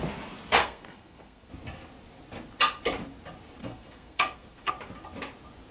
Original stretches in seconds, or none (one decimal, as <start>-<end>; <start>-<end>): 0.0-0.6; 1.5-3.6; 4.7-5.7